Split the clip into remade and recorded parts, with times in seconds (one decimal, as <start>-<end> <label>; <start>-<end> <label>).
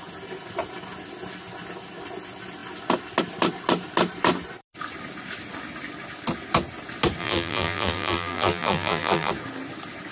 0.0-7.2 recorded; 7.2-9.3 remade; 9.3-10.1 recorded